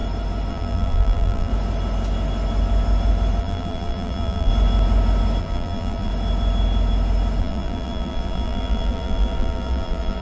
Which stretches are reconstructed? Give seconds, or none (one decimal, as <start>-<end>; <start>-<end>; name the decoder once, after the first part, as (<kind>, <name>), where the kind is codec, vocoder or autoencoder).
0.5-1.5 (vocoder, BigVGAN v2); 3.4-4.5; 5.4-6.1; 7.4-10.2